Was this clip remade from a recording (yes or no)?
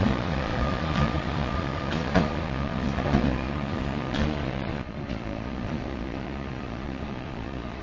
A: yes